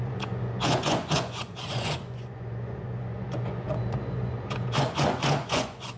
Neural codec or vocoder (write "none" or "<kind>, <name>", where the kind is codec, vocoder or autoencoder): vocoder, Vocos